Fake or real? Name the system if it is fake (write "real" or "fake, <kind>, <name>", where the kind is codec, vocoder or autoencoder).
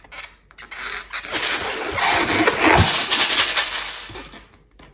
real